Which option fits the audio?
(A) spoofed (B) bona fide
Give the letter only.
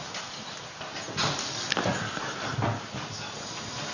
B